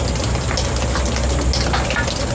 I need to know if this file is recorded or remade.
recorded